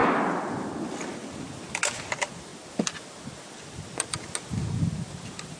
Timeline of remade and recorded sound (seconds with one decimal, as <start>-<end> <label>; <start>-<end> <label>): 0.0-5.6 recorded